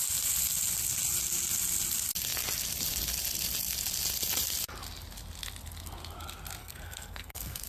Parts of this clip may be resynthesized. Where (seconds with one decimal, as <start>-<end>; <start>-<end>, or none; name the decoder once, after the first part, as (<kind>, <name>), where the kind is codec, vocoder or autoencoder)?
6.6-7.7 (codec, SNAC)